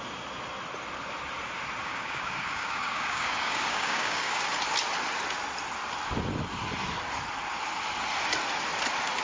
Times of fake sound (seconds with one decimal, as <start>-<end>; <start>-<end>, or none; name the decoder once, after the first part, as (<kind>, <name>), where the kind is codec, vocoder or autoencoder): 1.8-4.4 (codec, DAC)